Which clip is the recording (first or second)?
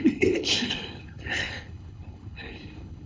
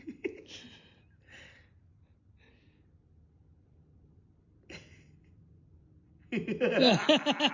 second